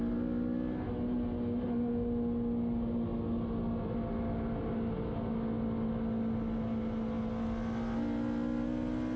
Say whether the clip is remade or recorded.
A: recorded